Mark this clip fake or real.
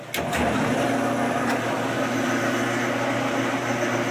real